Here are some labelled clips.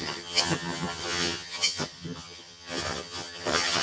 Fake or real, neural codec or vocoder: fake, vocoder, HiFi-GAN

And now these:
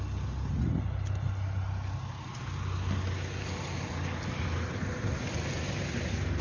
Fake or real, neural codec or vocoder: real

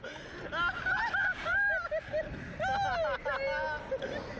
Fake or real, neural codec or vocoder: real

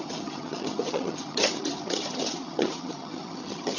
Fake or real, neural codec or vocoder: fake, vocoder, HiFi-GAN